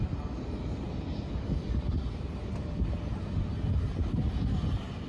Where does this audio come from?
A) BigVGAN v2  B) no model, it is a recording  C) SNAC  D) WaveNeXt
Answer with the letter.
B